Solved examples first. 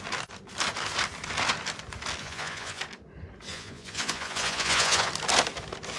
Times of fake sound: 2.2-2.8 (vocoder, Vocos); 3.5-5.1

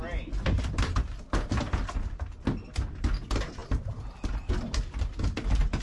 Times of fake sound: none

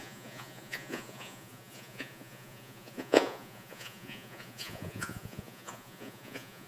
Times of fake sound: 0.0-6.7 (vocoder, Vocos)

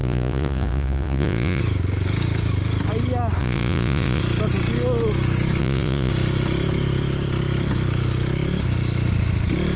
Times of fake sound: 0.0-1.6 (vocoder, Vocos); 3.4-4.2; 5.6-6.1

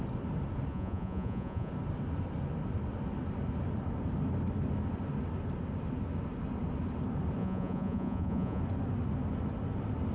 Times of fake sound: 0.7-1.7 (vocoder, Vocos); 7.4-8.6

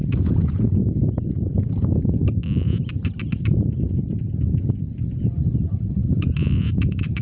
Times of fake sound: 0.0-2.2 (vocoder, Vocos); 4.5-7.2

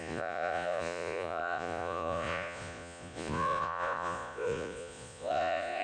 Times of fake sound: 0.0-5.8 (vocoder, Vocos)